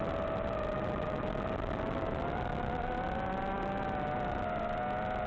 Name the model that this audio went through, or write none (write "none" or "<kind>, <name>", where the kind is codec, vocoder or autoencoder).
none